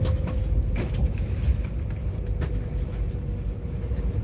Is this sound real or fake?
real